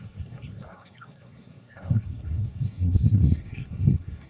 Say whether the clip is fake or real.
fake